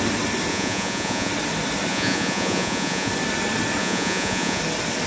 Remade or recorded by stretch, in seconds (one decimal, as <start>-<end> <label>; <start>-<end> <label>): 0.0-0.5 recorded; 0.5-1.3 remade; 1.3-1.9 recorded; 1.9-3.1 remade; 3.1-3.8 recorded; 3.8-4.6 remade; 4.6-5.1 recorded